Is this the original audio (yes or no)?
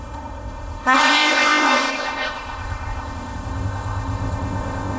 no